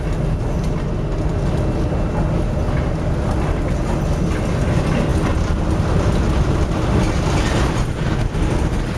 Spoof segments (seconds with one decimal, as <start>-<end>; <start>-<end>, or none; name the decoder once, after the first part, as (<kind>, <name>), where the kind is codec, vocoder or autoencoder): none